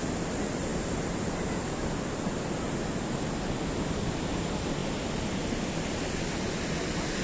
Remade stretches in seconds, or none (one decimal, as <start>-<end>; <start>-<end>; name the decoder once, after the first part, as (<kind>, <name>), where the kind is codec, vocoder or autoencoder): none